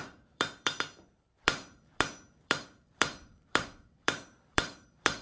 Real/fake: fake